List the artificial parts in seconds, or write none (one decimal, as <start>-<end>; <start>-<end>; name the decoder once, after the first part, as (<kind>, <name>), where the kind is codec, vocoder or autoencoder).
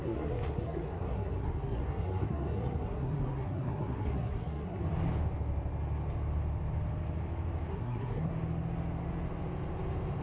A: 0.0-4.8 (codec, SNAC); 7.7-8.3